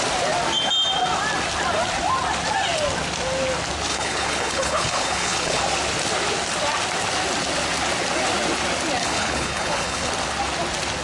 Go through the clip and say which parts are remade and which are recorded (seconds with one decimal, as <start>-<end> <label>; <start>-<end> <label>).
0.0-3.9 recorded; 3.9-5.6 remade; 5.6-9.0 recorded; 9.0-10.1 remade; 10.1-11.0 recorded